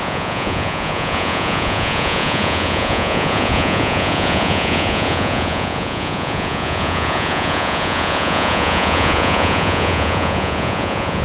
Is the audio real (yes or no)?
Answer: no